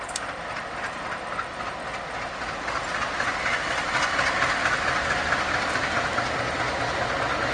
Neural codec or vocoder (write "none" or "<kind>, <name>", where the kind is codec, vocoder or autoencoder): none